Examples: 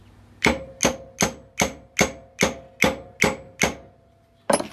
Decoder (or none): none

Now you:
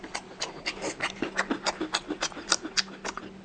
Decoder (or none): none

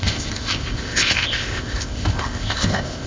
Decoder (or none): codec, ZipCodec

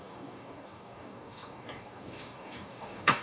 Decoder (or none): codec, DAC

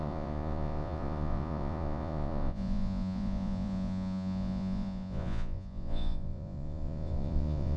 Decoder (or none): vocoder, Vocos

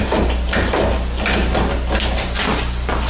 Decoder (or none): none